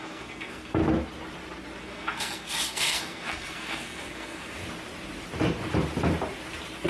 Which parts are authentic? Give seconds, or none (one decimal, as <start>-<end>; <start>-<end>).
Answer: 0.8-1.8; 4.6-6.9